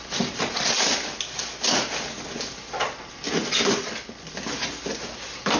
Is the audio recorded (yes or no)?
yes